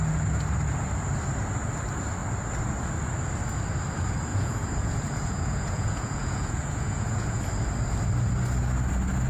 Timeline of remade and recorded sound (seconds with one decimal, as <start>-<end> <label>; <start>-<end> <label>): 0.0-4.3 recorded; 4.3-7.4 remade; 7.4-9.3 recorded